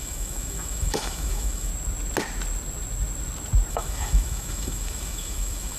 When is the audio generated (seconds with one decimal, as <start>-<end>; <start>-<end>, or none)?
0.0-1.7; 3.7-5.8